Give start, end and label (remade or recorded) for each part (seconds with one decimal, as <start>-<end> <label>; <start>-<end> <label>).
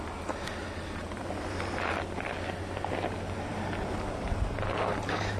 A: 0.0-0.6 recorded; 0.6-1.9 remade; 1.9-5.4 recorded